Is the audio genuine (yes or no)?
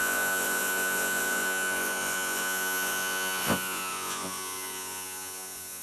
no